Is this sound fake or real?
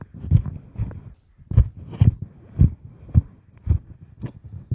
real